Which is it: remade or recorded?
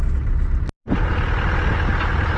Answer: recorded